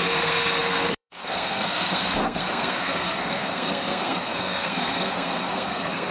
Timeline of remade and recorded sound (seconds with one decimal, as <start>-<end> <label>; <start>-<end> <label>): 0.0-6.1 remade